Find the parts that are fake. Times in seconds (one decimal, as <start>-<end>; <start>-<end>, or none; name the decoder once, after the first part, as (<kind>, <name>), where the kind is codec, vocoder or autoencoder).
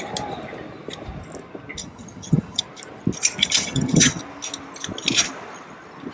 1.8-2.6 (vocoder, HiFi-GAN); 3.4-4.2